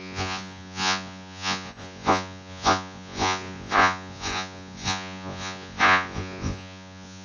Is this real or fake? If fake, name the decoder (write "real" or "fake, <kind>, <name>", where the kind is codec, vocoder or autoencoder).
fake, vocoder, Vocos